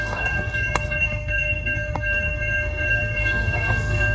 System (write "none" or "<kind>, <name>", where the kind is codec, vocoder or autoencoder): codec, SNAC